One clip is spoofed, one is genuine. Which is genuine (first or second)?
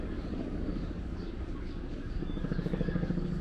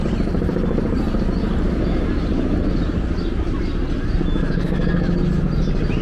second